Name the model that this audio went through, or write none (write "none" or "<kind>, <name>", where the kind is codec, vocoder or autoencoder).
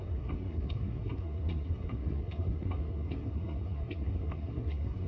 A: codec, SNAC